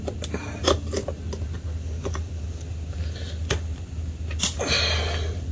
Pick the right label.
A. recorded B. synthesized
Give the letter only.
A